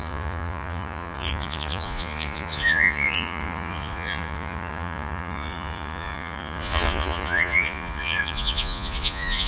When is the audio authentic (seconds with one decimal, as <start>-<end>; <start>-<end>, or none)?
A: none